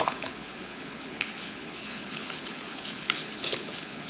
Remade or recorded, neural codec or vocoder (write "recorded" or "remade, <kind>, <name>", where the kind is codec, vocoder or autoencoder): remade, codec, HILCodec